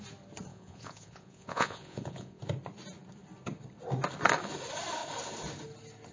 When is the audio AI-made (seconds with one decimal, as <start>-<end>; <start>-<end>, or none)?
0.5-2.4